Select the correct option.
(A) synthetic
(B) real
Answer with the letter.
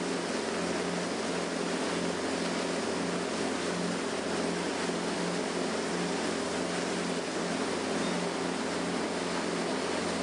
B